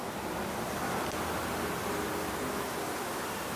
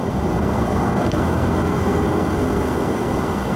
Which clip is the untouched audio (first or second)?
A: first